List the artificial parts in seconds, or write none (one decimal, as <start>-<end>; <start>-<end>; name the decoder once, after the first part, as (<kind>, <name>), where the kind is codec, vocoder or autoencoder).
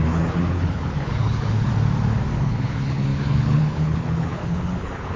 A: 0.0-1.7 (codec, HILCodec); 2.4-5.2